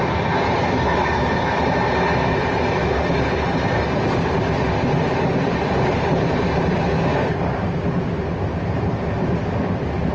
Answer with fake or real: real